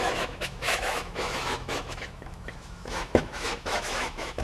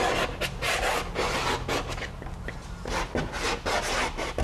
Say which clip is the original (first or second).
second